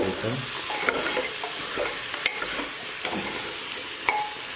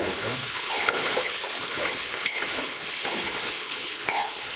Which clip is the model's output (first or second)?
second